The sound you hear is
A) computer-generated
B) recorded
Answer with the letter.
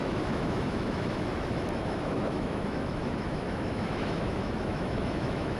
A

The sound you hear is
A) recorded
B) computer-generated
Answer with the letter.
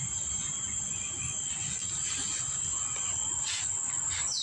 A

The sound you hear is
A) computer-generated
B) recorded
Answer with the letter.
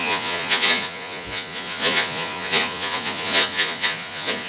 A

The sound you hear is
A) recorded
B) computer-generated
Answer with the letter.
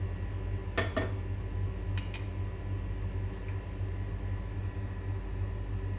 A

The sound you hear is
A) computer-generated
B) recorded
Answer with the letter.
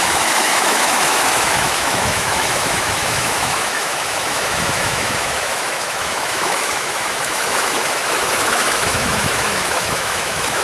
A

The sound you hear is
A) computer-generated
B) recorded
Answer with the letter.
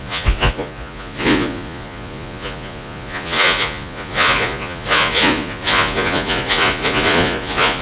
A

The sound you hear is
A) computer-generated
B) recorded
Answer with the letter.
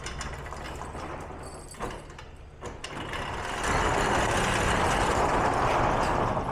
B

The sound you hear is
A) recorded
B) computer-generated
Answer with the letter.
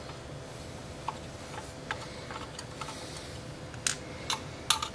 A